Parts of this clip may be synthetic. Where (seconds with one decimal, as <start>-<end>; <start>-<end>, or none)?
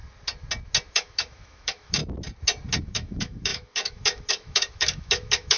0.9-2.0; 2.8-5.6